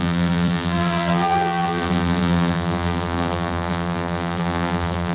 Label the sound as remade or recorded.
remade